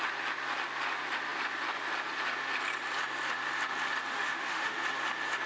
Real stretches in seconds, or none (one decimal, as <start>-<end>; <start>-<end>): 0.0-4.1; 4.8-5.5